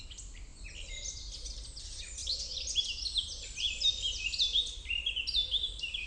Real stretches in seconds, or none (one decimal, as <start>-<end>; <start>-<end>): 0.0-6.1